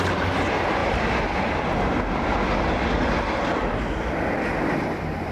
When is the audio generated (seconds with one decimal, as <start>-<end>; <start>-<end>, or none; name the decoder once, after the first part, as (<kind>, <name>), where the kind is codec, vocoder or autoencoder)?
none